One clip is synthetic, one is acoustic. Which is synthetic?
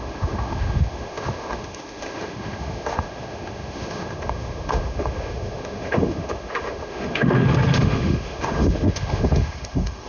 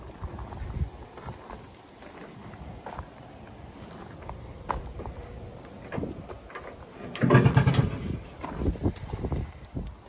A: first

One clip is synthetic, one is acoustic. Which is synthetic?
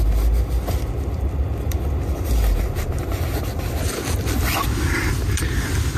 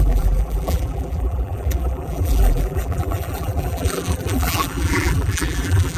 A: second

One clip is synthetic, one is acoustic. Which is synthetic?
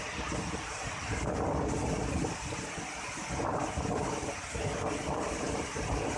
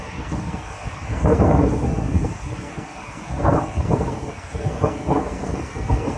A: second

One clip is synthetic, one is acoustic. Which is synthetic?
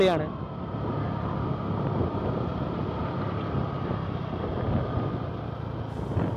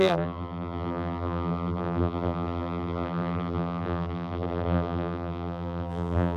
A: second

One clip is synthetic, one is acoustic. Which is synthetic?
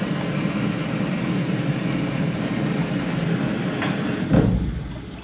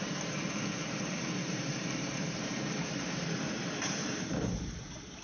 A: second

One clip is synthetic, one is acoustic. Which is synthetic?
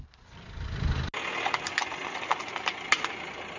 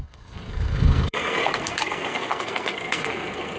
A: second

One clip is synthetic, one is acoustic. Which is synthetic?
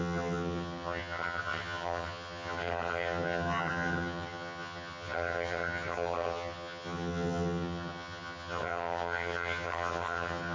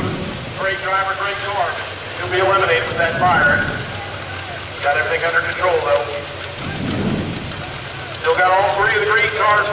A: first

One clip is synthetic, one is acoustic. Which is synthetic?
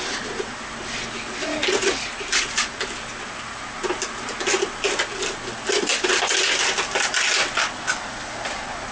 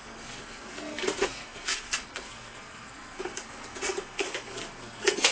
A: second